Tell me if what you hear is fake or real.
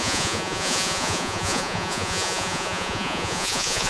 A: fake